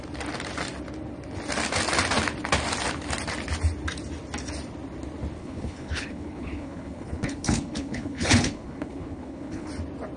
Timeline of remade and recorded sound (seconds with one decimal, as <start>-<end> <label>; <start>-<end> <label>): 0.0-5.4 recorded; 5.4-9.7 remade; 9.7-10.2 recorded